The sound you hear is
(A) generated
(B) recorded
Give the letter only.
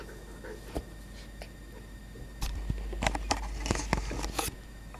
B